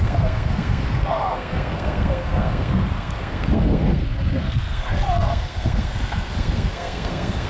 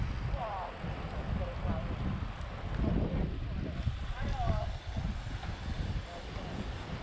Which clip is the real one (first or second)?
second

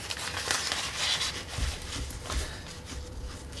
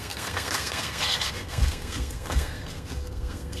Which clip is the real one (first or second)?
first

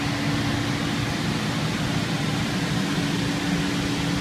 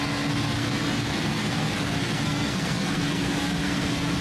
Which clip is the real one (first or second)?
first